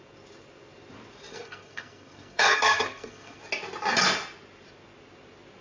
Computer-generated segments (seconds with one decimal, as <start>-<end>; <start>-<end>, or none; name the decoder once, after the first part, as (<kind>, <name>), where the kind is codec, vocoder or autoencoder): 1.3-3.4 (codec, SNAC)